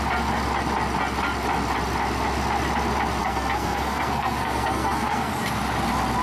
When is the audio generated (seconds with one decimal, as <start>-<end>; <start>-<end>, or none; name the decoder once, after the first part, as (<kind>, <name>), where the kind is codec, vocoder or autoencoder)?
3.2-5.3 (codec, SNAC)